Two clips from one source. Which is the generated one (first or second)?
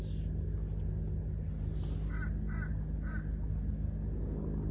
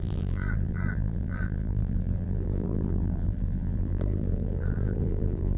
second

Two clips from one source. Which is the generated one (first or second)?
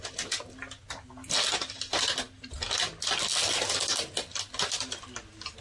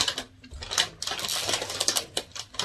second